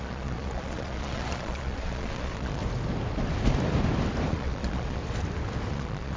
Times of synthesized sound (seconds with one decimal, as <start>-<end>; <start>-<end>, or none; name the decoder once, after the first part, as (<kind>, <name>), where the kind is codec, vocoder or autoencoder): 0.0-2.6 (vocoder, Vocos); 4.3-5.0; 5.7-6.2